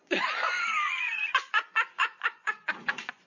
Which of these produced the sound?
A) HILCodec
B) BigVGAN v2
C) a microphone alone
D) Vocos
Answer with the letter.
D